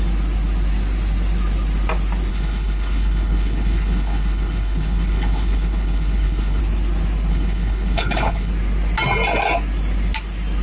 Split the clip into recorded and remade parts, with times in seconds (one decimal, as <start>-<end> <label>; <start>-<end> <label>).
0.0-2.3 recorded; 2.3-6.6 remade; 6.6-7.3 recorded; 7.3-8.5 remade; 8.5-10.6 recorded